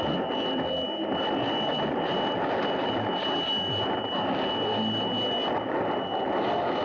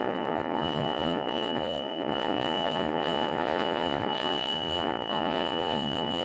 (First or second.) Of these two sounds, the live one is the first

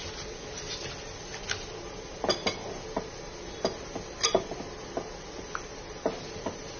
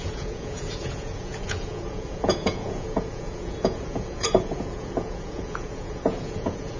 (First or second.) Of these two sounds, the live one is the first